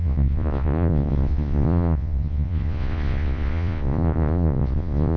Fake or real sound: fake